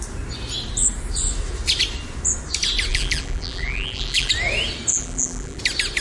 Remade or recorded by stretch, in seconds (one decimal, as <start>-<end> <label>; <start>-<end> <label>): 0.0-2.9 recorded; 2.9-4.3 remade; 4.3-4.9 recorded; 4.9-5.6 remade; 5.6-6.0 recorded